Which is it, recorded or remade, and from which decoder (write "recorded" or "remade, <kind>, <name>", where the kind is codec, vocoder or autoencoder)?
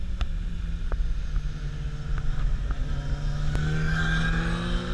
recorded